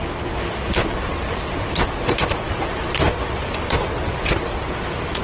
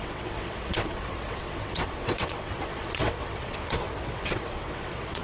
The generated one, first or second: second